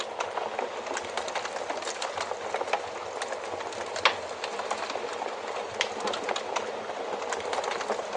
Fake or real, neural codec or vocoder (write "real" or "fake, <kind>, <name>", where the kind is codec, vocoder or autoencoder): real